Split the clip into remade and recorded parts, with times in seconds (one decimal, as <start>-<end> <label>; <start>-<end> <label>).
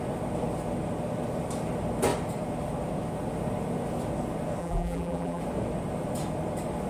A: 0.0-4.6 recorded; 4.6-5.4 remade; 5.4-6.9 recorded